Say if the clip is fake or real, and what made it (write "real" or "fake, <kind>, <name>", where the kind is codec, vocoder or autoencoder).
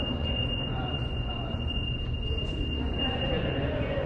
fake, vocoder, Vocos